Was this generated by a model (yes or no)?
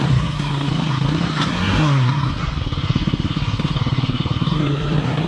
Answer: yes